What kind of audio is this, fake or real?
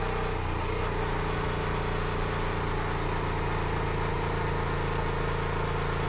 real